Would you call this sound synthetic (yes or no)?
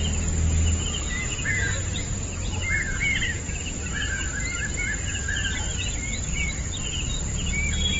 no